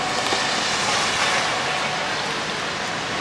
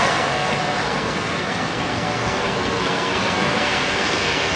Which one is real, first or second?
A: first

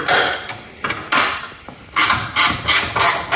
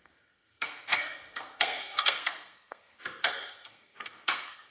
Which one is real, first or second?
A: first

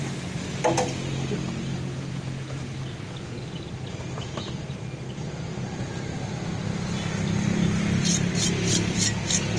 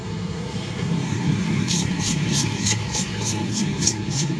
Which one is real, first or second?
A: first